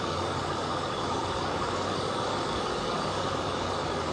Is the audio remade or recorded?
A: remade